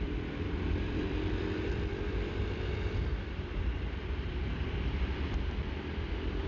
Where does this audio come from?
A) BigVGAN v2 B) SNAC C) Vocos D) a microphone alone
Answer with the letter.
A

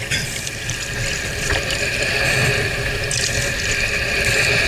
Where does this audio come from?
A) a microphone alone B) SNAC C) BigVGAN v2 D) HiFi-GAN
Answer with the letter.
C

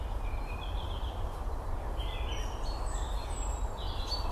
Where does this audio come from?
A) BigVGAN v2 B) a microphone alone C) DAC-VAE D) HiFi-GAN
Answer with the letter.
B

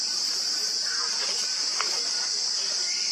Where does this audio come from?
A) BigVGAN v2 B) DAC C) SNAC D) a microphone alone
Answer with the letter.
D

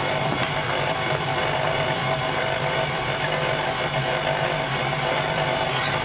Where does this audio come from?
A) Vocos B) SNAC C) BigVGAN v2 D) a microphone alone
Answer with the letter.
C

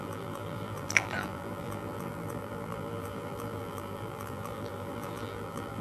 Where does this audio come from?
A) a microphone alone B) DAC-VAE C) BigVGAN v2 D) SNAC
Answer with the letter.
C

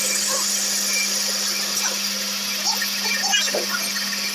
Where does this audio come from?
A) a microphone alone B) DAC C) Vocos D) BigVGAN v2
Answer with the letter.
A